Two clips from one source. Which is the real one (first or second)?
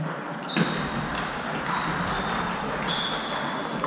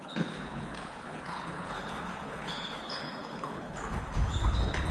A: first